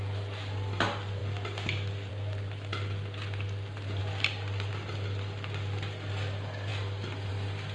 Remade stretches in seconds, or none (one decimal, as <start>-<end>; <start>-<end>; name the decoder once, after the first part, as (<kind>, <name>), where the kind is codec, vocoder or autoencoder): 1.2-2.1 (vocoder, BigVGAN v2); 4.0-4.7; 6.7-7.3